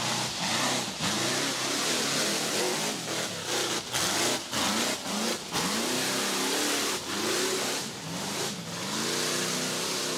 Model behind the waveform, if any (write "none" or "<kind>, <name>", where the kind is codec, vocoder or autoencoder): none